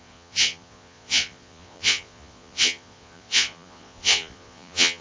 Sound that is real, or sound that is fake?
fake